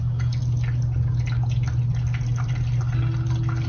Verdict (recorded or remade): recorded